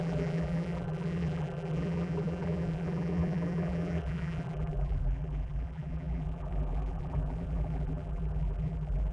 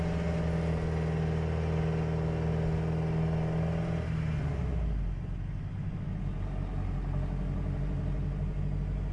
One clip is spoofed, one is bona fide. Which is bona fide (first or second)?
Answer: second